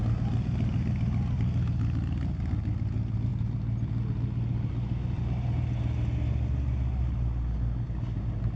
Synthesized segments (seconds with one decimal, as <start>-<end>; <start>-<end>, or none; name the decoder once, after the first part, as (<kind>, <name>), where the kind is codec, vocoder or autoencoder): none